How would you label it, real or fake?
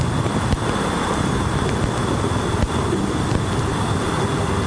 real